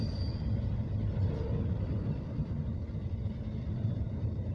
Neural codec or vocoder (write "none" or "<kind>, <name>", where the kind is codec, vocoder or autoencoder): none